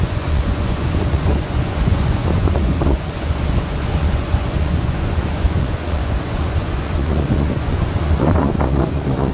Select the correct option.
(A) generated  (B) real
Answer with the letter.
A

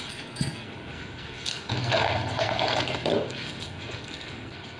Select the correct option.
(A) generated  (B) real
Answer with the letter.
A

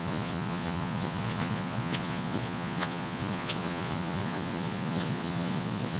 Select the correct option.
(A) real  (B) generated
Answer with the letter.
B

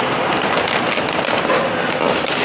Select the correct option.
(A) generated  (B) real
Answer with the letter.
B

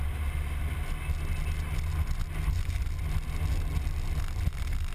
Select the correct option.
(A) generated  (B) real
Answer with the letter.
B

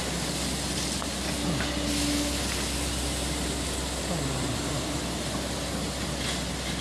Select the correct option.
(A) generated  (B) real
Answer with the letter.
B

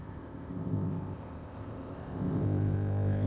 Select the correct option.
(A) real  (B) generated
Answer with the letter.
B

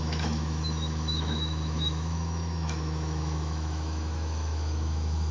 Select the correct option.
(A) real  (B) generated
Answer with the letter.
B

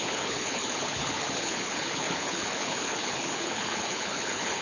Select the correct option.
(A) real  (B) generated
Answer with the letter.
B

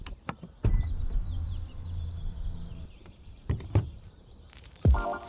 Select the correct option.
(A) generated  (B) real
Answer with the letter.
A